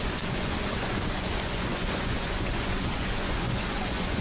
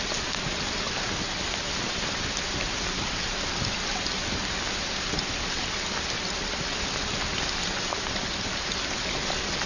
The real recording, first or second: second